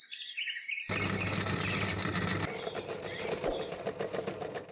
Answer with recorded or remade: recorded